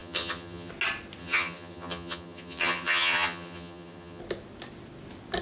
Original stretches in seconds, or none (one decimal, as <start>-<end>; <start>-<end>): 0.7-1.2; 4.2-5.4

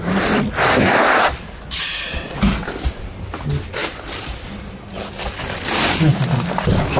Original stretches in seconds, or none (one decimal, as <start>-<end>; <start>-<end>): 0.0-7.0

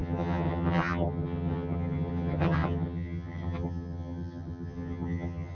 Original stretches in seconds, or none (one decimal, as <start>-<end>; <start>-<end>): none

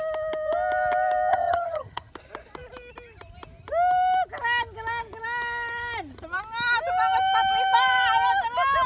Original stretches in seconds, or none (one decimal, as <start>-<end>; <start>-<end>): 0.0-1.3; 2.1-8.9

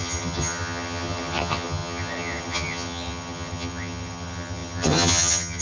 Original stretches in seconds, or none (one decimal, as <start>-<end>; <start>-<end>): none

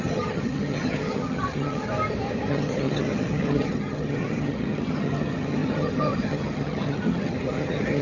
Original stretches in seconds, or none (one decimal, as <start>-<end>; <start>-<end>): 1.9-2.5